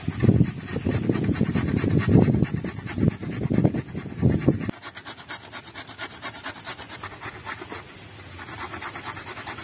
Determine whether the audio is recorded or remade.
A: recorded